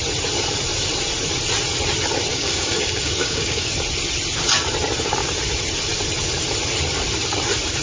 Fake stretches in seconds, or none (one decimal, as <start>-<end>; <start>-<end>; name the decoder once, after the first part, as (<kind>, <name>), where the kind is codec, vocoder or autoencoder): 2.3-3.7 (codec, DAC)